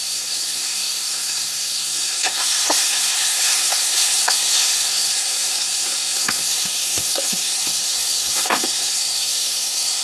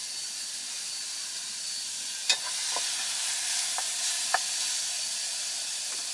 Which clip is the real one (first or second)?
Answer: second